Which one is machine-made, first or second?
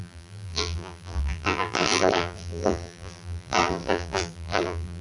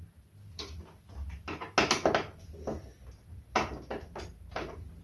first